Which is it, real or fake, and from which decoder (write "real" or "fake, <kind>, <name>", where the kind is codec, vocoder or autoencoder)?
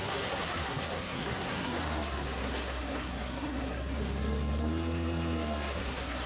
fake, codec, SNAC